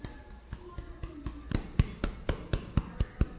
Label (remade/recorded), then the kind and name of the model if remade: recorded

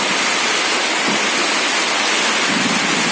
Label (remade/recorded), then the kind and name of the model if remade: recorded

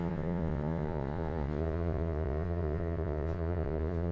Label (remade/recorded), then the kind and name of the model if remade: remade, vocoder, Vocos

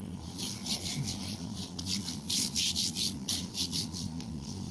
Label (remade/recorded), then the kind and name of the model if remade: remade, vocoder, Vocos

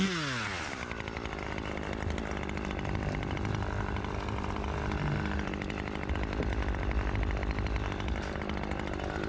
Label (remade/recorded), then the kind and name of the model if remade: recorded